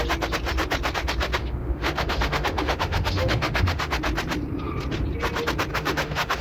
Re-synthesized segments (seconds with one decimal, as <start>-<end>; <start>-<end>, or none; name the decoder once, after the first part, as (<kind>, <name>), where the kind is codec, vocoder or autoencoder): 1.4-4.0 (autoencoder, DAC-VAE); 5.7-6.4

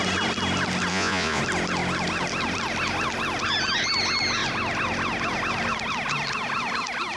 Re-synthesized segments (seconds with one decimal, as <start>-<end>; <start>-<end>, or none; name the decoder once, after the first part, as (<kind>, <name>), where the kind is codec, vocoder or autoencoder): 0.9-1.4 (vocoder, Vocos)

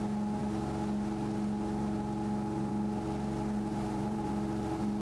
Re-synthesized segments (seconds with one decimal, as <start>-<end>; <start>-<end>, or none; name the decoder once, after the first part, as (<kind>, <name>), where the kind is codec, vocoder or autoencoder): 3.7-4.3 (vocoder, BigVGAN v2)

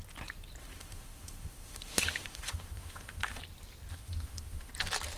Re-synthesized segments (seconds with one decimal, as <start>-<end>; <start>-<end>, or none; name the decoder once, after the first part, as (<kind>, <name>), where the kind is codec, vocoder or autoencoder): 0.6-3.4 (autoencoder, DAC-VAE); 3.9-4.7

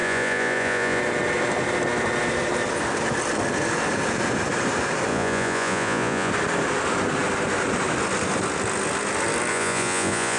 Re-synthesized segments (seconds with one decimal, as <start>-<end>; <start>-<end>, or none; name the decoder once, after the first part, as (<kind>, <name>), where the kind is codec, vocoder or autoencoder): 0.0-1.0 (vocoder, Vocos); 5.1-6.3; 9.5-10.4

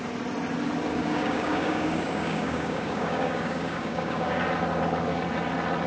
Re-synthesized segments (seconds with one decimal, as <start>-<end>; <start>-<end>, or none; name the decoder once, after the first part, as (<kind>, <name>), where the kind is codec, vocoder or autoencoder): 0.9-4.4 (codec, DAC)